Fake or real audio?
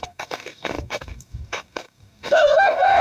fake